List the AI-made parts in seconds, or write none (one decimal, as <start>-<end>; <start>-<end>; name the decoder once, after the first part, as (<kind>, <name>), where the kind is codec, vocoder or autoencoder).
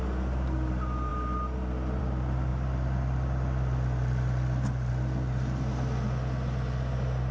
none